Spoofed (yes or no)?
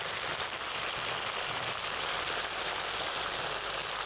no